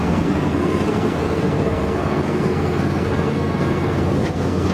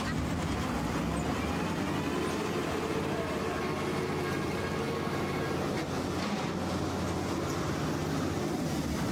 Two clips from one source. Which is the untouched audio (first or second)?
second